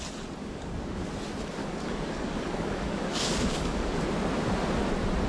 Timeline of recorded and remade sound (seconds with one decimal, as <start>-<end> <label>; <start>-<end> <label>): 0.0-0.4 recorded; 0.4-1.1 remade; 1.1-1.6 recorded; 1.6-4.0 remade; 4.0-5.3 recorded